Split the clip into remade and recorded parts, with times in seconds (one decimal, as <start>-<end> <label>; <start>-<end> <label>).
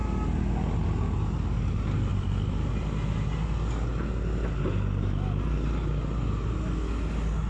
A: 0.0-2.1 recorded; 2.1-2.7 remade; 2.7-7.5 recorded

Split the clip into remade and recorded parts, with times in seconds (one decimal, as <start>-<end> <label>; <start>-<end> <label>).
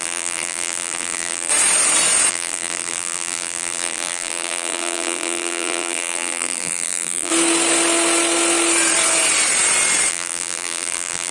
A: 0.0-1.5 remade; 1.5-2.3 recorded; 2.3-7.3 remade; 7.3-10.1 recorded; 10.1-11.3 remade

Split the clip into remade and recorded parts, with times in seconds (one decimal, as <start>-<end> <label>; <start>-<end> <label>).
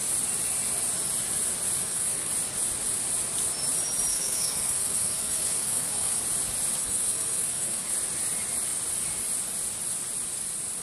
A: 0.0-1.8 recorded; 1.8-2.3 remade; 2.3-4.1 recorded; 4.1-6.2 remade; 6.2-6.8 recorded; 6.8-7.9 remade; 7.9-10.8 recorded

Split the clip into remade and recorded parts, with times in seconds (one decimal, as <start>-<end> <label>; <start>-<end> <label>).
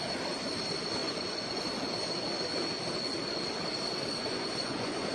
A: 0.0-1.0 recorded; 1.0-1.6 remade; 1.6-4.2 recorded; 4.2-5.1 remade